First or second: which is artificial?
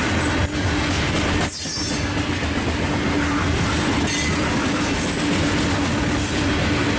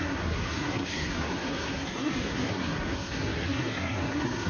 second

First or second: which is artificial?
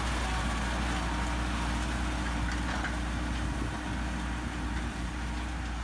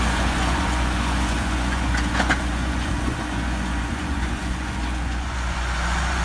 second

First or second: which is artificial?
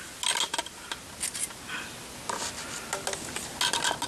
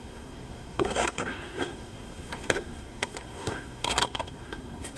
second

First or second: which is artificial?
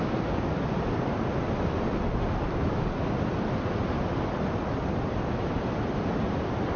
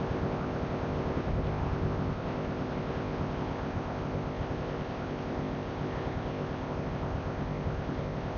second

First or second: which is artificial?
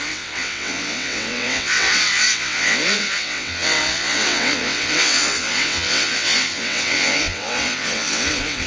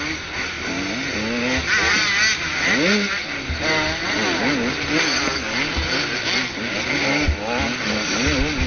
first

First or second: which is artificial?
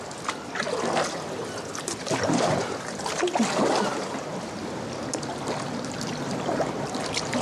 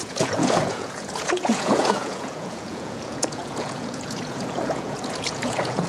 second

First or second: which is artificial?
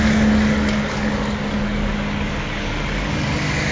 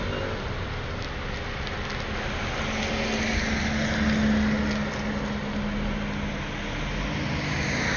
first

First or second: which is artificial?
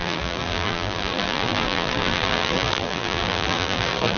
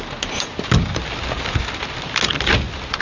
first